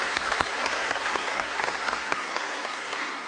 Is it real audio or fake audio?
fake